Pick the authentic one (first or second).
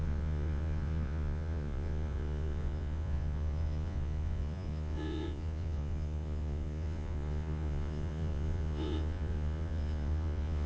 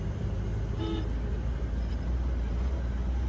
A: second